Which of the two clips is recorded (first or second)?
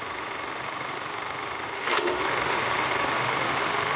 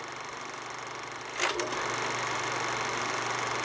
second